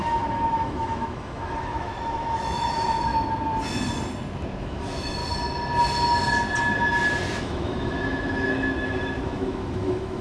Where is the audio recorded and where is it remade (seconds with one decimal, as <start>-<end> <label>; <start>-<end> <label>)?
0.0-3.1 remade; 3.1-4.6 recorded; 4.6-5.2 remade; 5.2-7.4 recorded; 7.4-10.2 remade